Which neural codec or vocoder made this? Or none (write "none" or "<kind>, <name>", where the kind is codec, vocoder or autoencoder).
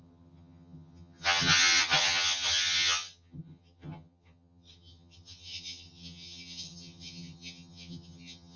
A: vocoder, HiFi-GAN